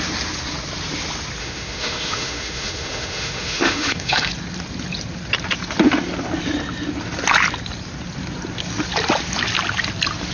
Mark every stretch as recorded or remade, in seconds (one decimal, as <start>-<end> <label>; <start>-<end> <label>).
0.0-1.4 recorded; 1.4-4.3 remade; 4.3-10.3 recorded